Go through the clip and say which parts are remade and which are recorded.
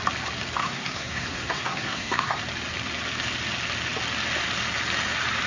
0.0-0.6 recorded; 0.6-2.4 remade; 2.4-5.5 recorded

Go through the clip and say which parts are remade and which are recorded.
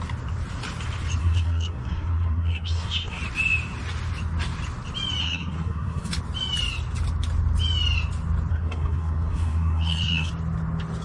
0.0-1.2 recorded; 1.2-3.2 remade; 3.2-5.2 recorded; 5.2-6.1 remade; 6.1-8.5 recorded; 8.5-10.3 remade; 10.3-11.0 recorded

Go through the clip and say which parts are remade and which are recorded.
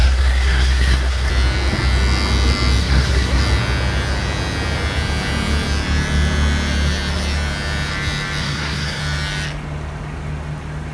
0.0-1.3 remade; 1.3-2.8 recorded; 2.8-3.4 remade; 3.4-8.4 recorded; 8.4-9.0 remade; 9.0-10.9 recorded